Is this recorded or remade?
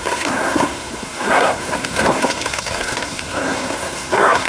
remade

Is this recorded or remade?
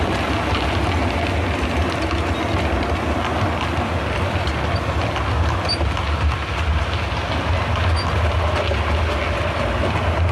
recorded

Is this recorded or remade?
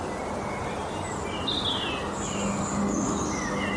recorded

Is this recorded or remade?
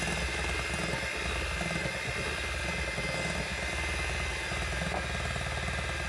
recorded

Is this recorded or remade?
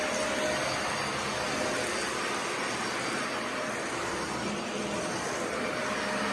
recorded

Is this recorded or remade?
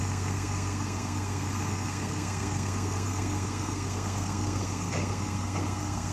remade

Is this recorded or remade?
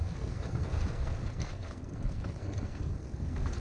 remade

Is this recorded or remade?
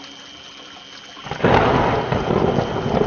recorded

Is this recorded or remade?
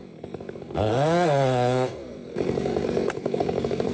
remade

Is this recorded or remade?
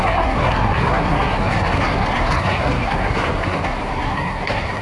remade